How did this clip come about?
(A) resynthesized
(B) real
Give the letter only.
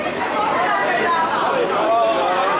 A